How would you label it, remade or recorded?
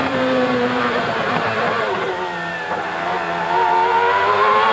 remade